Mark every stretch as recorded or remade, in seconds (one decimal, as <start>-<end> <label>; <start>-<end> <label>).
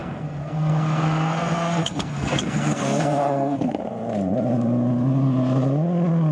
0.0-3.8 remade; 3.8-6.3 recorded